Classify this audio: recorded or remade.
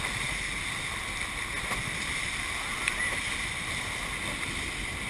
recorded